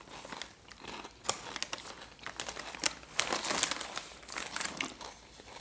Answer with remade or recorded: recorded